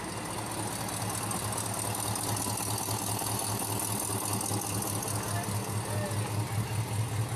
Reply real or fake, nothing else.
real